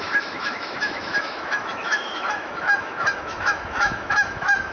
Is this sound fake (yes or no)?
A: yes